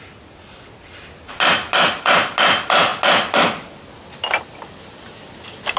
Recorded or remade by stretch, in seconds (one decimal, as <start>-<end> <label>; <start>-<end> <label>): 0.0-5.8 recorded

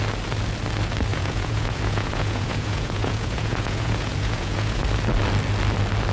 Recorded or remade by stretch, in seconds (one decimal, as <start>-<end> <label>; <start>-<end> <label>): 0.0-1.1 recorded; 1.1-4.8 remade; 4.8-6.1 recorded

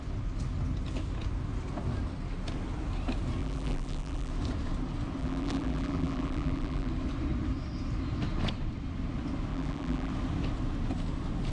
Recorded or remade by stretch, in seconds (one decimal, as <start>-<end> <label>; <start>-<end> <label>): 0.0-3.4 recorded; 3.4-4.3 remade; 4.3-5.2 recorded; 5.2-6.9 remade; 6.9-9.5 recorded; 9.5-10.1 remade; 10.1-11.5 recorded

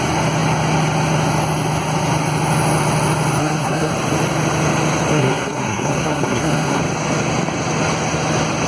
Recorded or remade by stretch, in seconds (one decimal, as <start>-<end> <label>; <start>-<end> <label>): 0.0-3.4 recorded; 3.4-3.9 remade; 3.9-5.1 recorded; 5.1-6.8 remade; 6.8-8.7 recorded

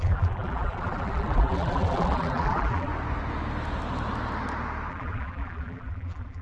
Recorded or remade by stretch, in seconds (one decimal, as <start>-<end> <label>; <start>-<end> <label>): 0.0-2.9 remade; 2.9-4.9 recorded; 4.9-6.4 remade

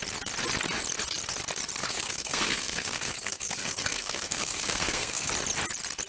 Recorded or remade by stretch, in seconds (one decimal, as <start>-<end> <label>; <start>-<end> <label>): 0.0-1.8 recorded; 1.8-5.3 remade; 5.3-6.1 recorded

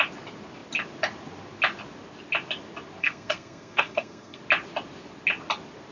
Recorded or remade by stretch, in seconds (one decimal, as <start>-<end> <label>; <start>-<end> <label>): 0.0-3.0 recorded; 3.0-4.4 remade; 4.4-5.9 recorded